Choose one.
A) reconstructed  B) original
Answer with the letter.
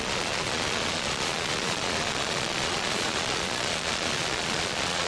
A